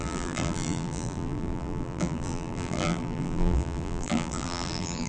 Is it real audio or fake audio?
fake